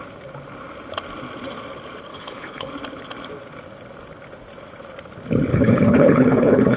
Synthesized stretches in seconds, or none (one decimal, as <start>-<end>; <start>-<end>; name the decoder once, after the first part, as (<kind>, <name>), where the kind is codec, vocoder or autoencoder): 2.1-2.7 (codec, HILCodec); 5.5-6.8